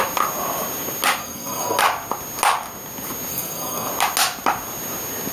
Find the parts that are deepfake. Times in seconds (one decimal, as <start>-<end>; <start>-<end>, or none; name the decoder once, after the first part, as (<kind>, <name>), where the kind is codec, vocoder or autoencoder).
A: 1.2-1.8 (codec, SNAC); 3.3-3.9